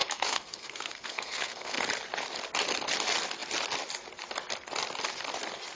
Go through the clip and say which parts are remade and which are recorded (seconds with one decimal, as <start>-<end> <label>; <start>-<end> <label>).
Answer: 0.0-1.8 remade; 1.8-5.8 recorded